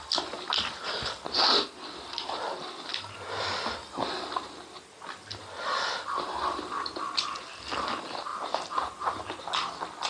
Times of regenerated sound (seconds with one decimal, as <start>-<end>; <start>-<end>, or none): none